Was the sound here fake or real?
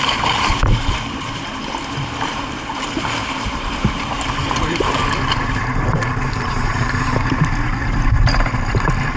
fake